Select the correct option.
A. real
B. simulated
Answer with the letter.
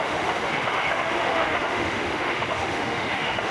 B